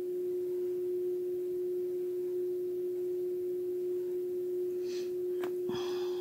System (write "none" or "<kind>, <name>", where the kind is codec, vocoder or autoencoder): none